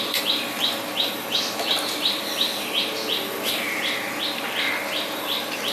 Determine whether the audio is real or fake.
real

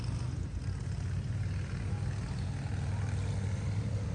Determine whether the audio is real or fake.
real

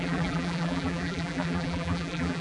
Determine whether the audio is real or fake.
fake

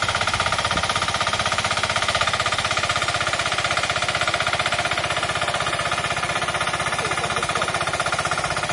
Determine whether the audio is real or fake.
fake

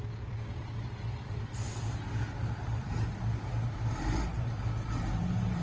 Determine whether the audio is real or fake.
real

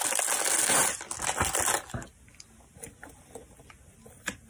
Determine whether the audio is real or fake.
real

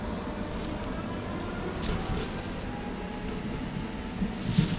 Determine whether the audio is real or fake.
real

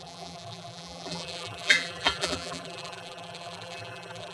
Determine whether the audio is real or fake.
fake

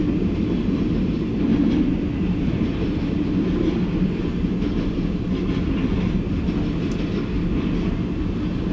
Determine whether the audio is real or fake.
real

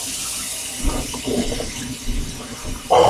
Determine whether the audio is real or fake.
fake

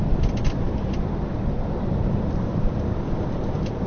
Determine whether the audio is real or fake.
fake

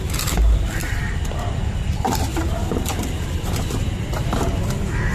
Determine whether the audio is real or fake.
fake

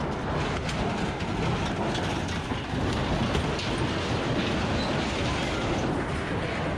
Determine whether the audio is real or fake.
real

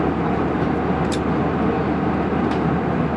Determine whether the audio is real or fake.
real